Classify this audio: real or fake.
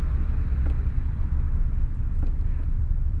fake